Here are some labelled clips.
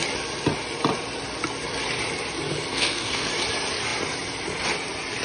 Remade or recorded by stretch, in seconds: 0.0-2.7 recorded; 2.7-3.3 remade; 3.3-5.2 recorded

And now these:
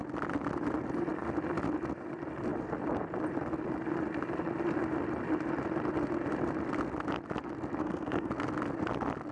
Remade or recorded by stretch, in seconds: 0.0-7.8 recorded; 7.8-8.3 remade; 8.3-9.3 recorded

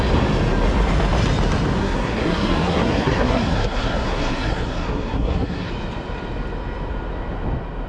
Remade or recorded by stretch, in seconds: 0.0-1.8 recorded; 1.8-5.7 remade; 5.7-7.9 recorded

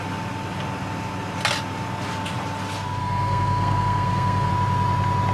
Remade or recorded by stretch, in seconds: 0.0-3.0 recorded; 3.0-4.5 remade; 4.5-5.3 recorded

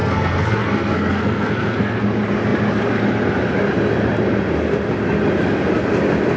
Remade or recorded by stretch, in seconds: 0.0-2.0 remade; 2.0-6.4 recorded

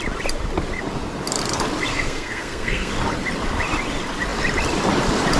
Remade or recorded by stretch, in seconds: 0.0-1.9 recorded; 1.9-2.9 remade; 2.9-5.4 recorded

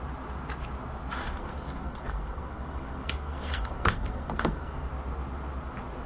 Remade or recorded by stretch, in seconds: 0.0-1.2 recorded; 1.2-4.9 remade; 4.9-6.1 recorded

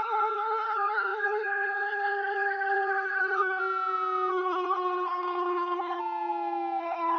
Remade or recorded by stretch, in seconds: 0.0-3.6 remade; 3.6-4.3 recorded; 4.3-6.0 remade; 6.0-6.8 recorded; 6.8-7.2 remade